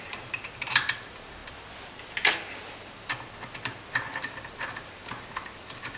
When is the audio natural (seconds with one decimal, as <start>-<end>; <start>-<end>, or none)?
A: 1.4-2.6; 3.1-4.2; 5.0-5.6